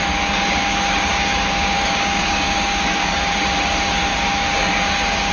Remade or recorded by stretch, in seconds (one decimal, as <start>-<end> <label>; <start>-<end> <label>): 0.0-3.2 remade; 3.2-4.1 recorded; 4.1-5.3 remade